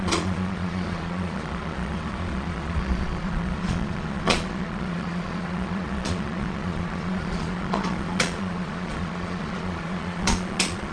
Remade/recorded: remade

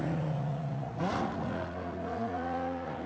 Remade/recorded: remade